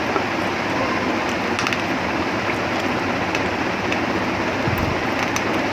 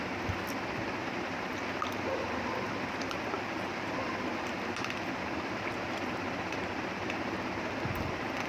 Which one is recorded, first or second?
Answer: first